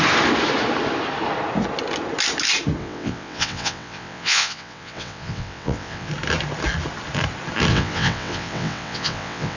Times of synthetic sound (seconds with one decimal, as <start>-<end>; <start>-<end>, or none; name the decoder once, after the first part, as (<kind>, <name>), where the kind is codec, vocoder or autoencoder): 2.8-6.1 (vocoder, WaveNeXt); 7.7-9.6